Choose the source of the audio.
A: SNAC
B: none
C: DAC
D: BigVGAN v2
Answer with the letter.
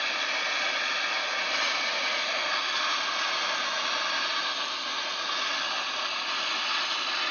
B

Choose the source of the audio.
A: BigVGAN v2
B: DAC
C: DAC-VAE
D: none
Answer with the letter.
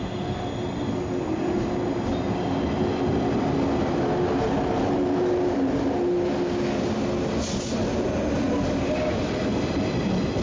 D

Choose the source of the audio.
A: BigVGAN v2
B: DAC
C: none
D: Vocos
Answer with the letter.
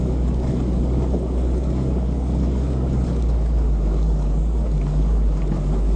B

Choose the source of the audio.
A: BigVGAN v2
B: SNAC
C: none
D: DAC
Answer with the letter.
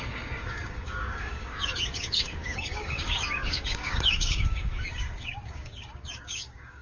D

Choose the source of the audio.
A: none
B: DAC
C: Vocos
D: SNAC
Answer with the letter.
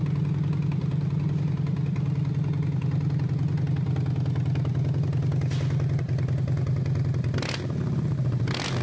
A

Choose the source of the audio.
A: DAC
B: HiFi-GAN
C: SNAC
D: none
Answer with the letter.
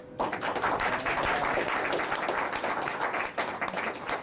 D